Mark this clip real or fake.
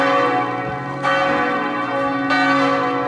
real